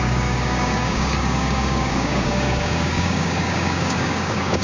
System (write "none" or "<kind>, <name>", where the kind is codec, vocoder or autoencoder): codec, DAC